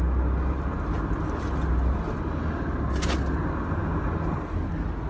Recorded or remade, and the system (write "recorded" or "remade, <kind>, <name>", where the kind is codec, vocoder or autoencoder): recorded